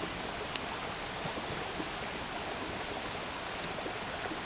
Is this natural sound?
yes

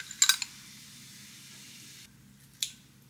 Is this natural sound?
yes